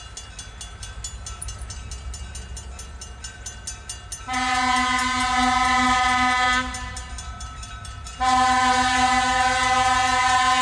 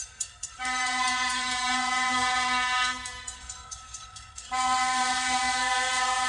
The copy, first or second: second